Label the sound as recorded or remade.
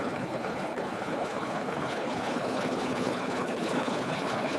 remade